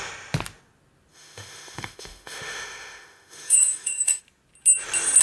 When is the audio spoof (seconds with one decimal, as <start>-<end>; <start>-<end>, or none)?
1.1-4.2